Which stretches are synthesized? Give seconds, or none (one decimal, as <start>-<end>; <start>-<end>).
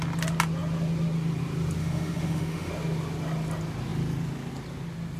1.8-2.7